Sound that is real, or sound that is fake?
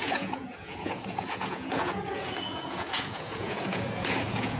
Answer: fake